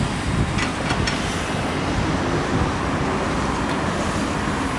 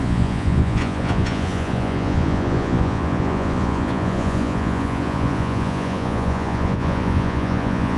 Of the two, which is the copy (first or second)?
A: second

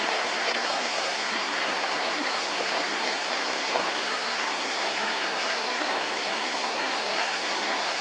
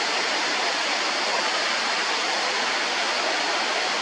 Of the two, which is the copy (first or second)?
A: first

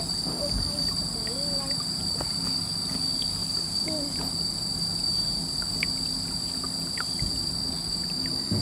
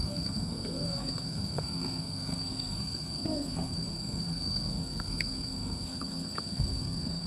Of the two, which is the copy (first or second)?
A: second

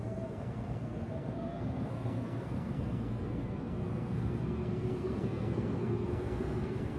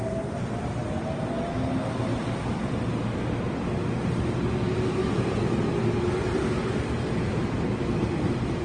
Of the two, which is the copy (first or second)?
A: first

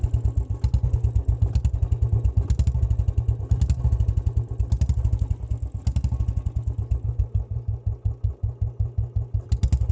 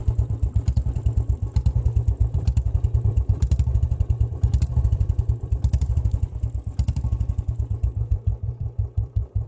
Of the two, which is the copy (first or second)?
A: second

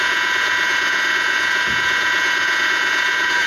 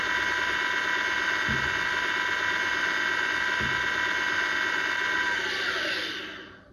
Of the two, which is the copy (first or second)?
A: first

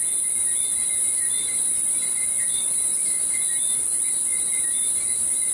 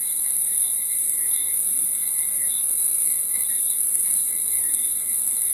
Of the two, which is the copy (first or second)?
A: second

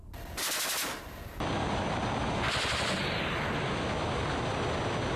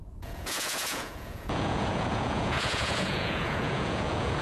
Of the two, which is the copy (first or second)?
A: second